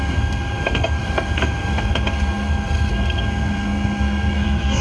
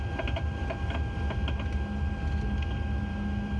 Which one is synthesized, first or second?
first